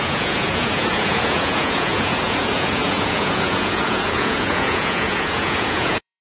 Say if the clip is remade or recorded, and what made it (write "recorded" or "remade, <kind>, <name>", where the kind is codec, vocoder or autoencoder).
remade, vocoder, Vocos